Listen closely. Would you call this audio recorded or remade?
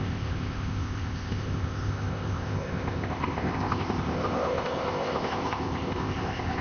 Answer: remade